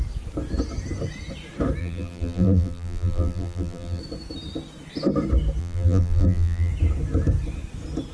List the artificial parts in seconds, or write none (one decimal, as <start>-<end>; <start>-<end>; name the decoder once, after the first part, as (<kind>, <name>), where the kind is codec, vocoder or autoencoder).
1.8-4.0 (vocoder, BigVGAN v2); 5.6-6.7